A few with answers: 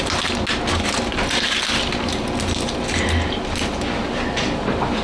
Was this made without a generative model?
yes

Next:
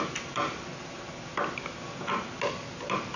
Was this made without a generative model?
yes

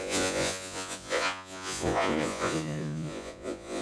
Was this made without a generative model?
no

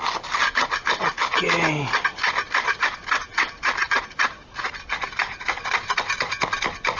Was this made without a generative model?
yes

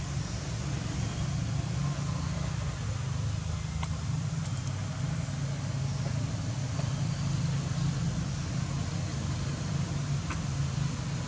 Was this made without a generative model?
yes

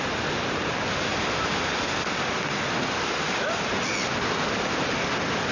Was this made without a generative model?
yes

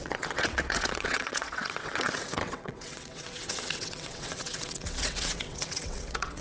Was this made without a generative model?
no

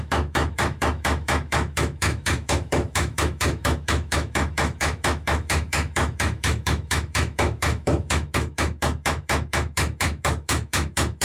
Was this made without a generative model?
no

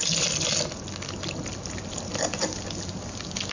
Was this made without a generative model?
yes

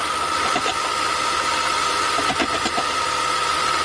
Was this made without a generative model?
yes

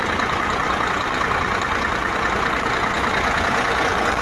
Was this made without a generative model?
no